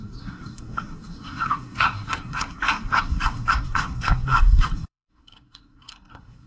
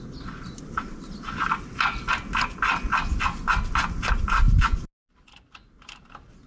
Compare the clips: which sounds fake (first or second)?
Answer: first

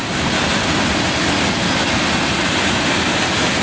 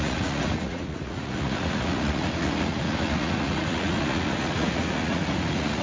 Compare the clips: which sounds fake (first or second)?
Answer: second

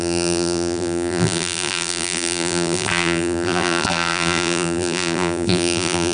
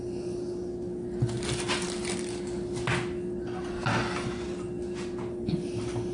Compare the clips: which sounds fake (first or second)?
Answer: first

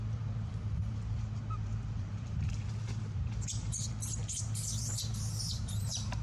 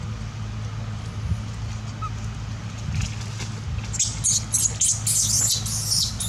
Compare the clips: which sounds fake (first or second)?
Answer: first